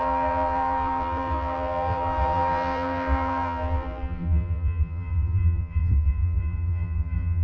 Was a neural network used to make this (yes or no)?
yes